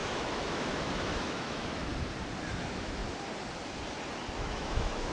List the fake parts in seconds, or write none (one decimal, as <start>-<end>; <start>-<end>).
0.0-1.9; 2.5-3.0; 4.4-5.1